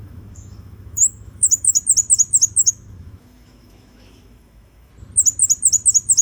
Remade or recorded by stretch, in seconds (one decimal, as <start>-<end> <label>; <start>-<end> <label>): 0.0-1.8 remade; 1.8-2.6 recorded; 2.6-4.9 remade; 4.9-6.2 recorded

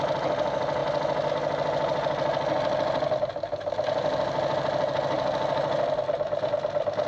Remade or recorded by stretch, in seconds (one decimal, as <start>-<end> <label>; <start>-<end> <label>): 0.0-7.1 recorded